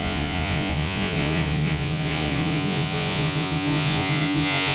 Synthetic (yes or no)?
yes